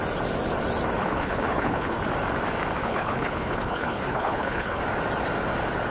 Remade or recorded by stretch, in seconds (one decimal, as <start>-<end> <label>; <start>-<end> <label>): 0.0-1.0 recorded; 1.0-2.1 remade; 2.1-2.8 recorded; 2.8-4.8 remade; 4.8-5.9 recorded